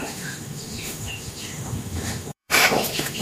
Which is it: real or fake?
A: fake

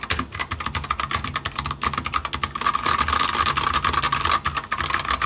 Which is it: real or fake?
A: real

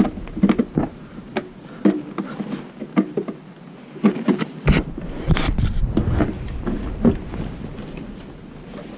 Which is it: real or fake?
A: real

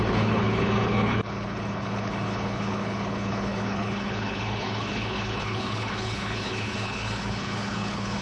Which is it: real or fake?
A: fake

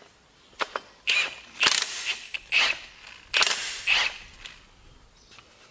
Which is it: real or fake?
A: real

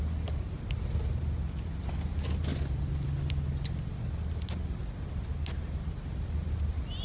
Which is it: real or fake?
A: real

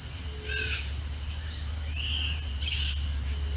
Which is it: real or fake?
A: real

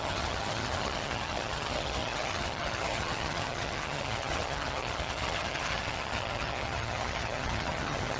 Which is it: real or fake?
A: fake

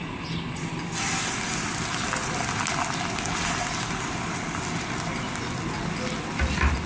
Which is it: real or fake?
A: real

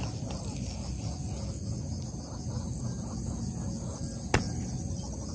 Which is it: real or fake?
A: real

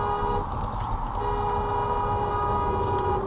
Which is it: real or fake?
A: real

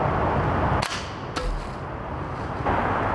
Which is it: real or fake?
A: real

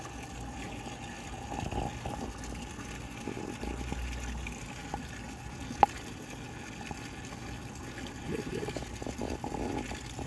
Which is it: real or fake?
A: real